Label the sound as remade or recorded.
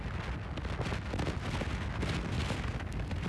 recorded